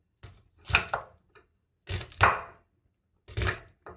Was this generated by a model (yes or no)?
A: no